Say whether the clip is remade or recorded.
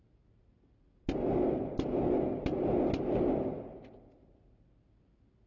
recorded